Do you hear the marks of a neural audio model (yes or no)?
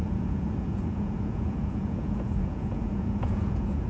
yes